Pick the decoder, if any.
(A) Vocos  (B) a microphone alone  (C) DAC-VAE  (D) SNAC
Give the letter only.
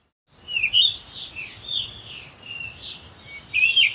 B